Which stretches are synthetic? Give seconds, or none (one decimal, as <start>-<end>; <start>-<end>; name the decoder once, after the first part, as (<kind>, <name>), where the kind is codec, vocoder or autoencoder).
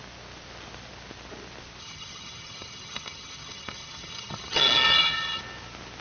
1.8-5.4 (vocoder, HiFi-GAN)